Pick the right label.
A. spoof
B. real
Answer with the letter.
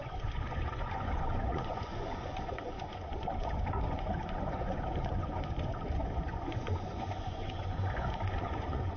A